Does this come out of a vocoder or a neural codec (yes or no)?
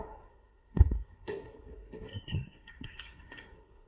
yes